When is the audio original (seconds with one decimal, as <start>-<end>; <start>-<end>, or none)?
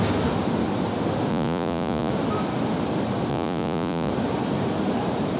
0.0-1.3; 2.1-3.3; 4.1-5.4